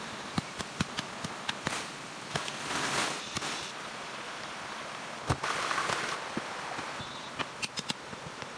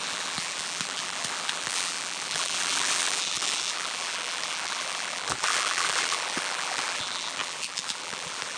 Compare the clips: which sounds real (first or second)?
first